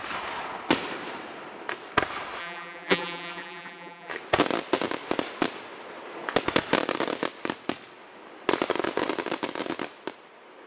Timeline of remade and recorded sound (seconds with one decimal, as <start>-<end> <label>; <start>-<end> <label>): 0.0-2.4 recorded; 2.4-4.1 remade; 4.1-10.7 recorded

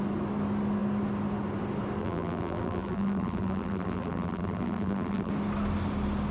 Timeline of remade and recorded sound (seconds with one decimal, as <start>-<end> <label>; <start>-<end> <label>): 0.0-2.0 recorded; 2.0-5.3 remade; 5.3-6.3 recorded